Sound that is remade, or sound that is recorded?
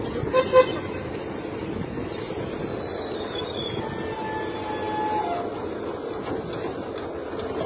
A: recorded